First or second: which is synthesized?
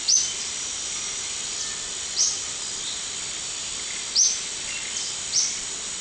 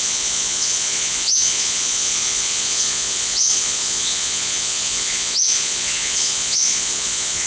second